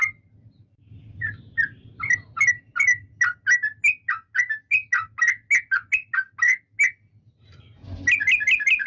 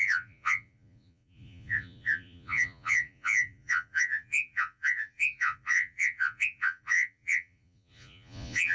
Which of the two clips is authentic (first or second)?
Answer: first